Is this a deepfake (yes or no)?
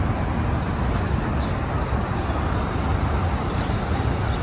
no